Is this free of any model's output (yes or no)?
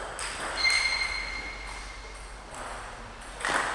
yes